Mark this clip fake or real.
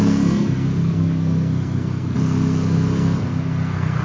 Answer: fake